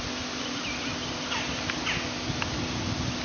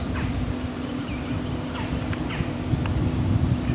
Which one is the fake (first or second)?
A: second